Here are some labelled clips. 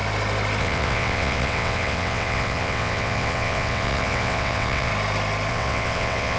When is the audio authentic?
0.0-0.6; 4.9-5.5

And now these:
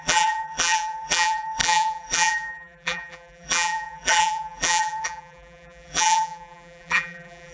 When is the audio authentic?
none

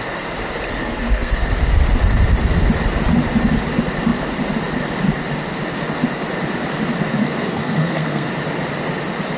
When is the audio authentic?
0.0-0.8; 1.4-7.2; 8.3-9.4

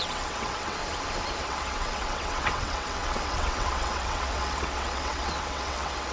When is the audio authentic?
0.8-1.4

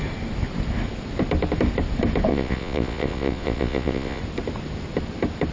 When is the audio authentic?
0.0-2.3; 4.2-5.5